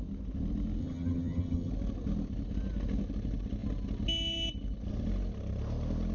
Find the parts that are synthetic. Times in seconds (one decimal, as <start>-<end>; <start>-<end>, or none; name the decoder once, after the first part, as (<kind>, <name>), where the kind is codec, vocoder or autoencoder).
0.8-1.7 (vocoder, HiFi-GAN)